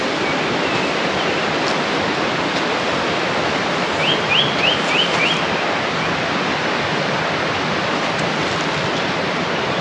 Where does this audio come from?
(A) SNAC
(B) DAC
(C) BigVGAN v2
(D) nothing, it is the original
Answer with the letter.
D